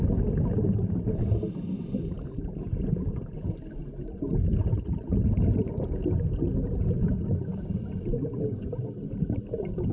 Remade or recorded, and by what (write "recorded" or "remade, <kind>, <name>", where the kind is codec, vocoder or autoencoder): recorded